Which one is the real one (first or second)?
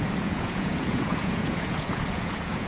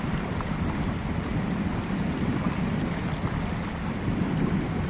second